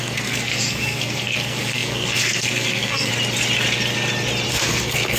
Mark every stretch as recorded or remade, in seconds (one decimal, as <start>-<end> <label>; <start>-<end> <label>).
0.0-3.1 remade; 3.1-4.5 recorded; 4.5-5.2 remade